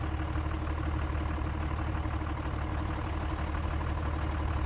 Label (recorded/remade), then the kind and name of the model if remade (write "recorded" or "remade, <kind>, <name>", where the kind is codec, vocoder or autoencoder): recorded